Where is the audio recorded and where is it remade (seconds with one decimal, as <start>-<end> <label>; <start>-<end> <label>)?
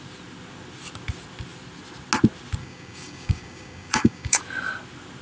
0.0-2.6 recorded; 2.6-4.4 remade; 4.4-5.2 recorded